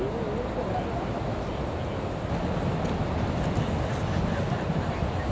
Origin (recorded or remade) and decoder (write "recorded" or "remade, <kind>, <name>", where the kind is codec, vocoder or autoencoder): recorded